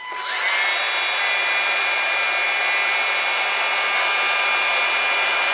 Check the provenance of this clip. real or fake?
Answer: real